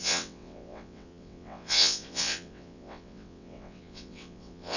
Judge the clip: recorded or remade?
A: remade